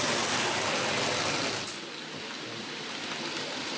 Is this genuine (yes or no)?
yes